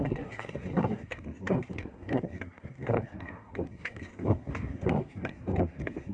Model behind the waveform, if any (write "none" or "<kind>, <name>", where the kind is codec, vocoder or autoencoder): codec, SNAC